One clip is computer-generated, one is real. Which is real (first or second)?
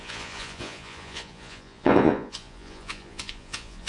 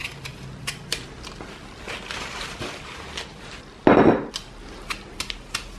second